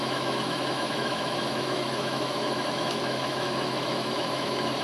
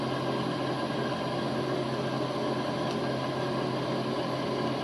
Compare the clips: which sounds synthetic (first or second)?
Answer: first